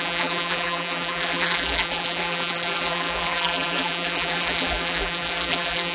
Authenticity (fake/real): fake